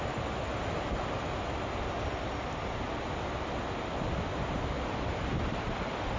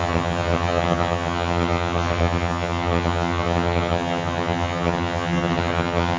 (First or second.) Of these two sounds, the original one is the first